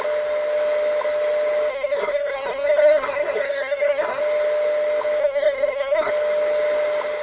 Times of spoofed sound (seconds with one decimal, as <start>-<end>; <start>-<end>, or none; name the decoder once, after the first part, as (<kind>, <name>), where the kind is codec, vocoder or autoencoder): 1.7-4.2 (codec, SNAC); 5.2-6.1